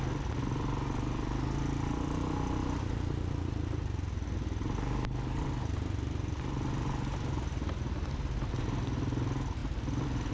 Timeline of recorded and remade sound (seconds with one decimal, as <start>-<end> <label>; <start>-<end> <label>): 0.0-10.3 recorded